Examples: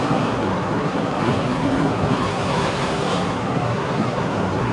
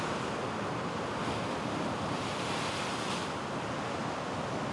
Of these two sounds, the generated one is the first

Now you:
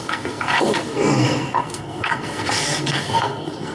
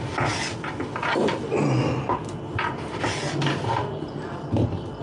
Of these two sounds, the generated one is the first